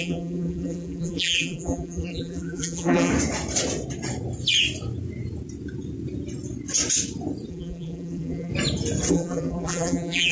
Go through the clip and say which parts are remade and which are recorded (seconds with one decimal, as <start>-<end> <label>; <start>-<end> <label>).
0.0-3.1 remade; 3.1-7.5 recorded; 7.5-8.5 remade; 8.5-9.1 recorded; 9.1-10.3 remade